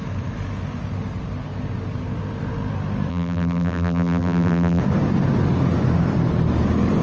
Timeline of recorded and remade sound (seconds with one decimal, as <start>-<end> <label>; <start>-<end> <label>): 0.0-3.1 recorded; 3.1-4.8 remade; 4.8-7.0 recorded

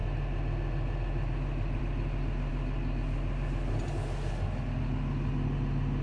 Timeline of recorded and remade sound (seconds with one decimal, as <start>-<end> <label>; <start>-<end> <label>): 0.0-6.0 recorded

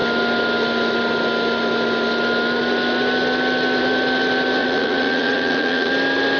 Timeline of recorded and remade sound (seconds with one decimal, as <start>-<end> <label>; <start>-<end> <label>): 0.0-4.6 recorded; 4.6-5.9 remade; 5.9-6.4 recorded

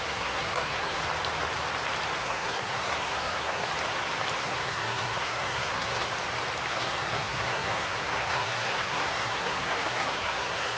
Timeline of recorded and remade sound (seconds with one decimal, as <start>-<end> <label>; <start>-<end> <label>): 0.0-1.0 remade; 1.0-2.2 recorded; 2.2-3.7 remade; 3.7-4.4 recorded; 4.4-6.1 remade; 6.1-6.7 recorded; 6.7-10.8 remade

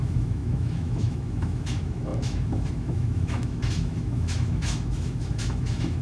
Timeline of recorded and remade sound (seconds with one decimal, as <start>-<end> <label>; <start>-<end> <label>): 0.0-6.0 remade

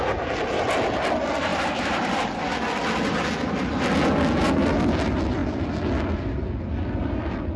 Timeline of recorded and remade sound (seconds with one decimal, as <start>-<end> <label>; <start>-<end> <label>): 0.0-1.5 recorded; 1.5-2.5 remade; 2.5-7.6 recorded

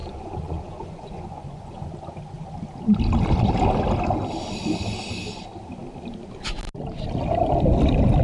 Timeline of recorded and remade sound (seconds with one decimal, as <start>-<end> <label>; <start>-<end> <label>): 0.0-1.9 remade; 1.9-8.2 recorded

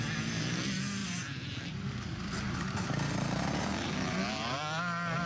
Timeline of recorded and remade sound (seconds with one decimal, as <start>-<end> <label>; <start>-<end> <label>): 0.0-1.0 recorded; 1.0-4.2 remade; 4.2-5.3 recorded